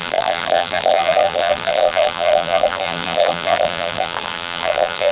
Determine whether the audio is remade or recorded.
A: remade